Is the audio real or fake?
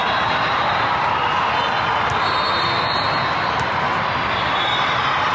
real